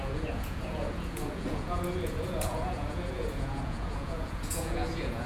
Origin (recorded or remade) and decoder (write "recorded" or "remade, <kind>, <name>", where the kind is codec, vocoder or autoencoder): remade, vocoder, Vocos